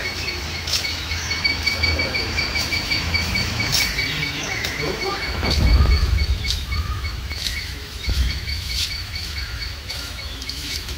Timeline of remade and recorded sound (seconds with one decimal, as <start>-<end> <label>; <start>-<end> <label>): 0.0-3.7 remade; 3.7-4.2 recorded; 4.2-11.0 remade